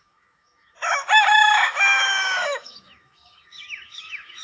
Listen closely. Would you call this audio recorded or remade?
remade